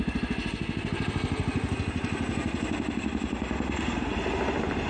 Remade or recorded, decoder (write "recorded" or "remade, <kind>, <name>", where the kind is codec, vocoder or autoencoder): recorded